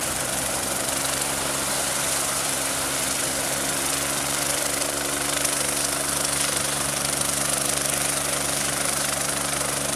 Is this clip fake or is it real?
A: fake